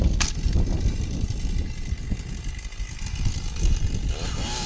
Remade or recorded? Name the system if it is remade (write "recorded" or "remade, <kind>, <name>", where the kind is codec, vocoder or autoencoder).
recorded